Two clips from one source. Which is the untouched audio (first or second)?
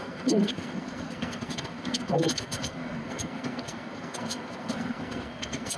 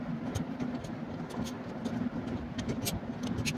second